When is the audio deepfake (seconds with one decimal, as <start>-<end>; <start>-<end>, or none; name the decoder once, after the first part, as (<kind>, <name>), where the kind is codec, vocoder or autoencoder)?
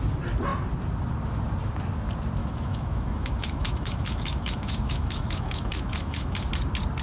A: 2.4-6.5 (autoencoder, DAC-VAE)